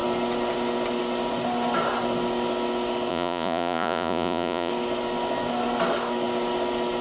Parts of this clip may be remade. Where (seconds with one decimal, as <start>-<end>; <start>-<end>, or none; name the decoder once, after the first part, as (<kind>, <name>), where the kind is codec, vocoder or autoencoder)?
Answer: 3.1-4.7 (vocoder, Vocos)